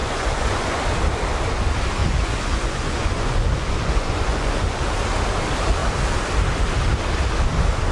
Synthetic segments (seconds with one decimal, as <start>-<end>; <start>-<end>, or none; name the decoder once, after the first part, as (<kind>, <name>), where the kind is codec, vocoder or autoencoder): 0.0-0.8 (vocoder, Vocos); 2.0-4.8